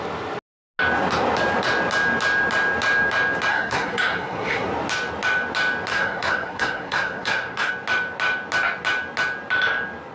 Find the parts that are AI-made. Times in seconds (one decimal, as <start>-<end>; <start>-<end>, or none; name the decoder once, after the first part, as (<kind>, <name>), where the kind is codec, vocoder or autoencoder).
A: 3.5-4.7 (codec, SNAC); 5.9-7.7